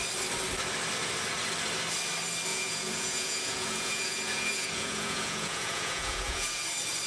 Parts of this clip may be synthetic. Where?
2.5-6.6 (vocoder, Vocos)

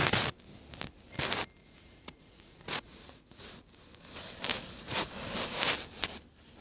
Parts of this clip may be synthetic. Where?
1.6-3.5 (vocoder, Vocos); 4.5-5.1

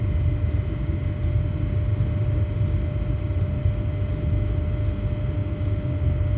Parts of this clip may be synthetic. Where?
none

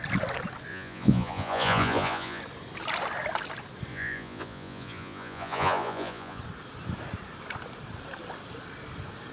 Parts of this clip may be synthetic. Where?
0.7-2.4 (vocoder, Vocos); 3.9-6.4

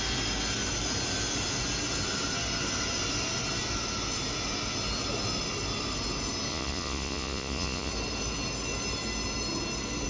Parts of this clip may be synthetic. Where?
6.5-7.9 (vocoder, Vocos)

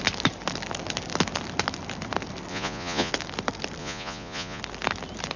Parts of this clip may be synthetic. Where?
2.5-3.1 (vocoder, Vocos); 3.8-4.6